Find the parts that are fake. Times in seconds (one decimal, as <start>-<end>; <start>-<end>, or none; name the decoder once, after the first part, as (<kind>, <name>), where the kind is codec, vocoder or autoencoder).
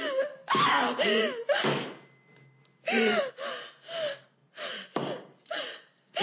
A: none